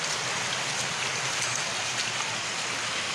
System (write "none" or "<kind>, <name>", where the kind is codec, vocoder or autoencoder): none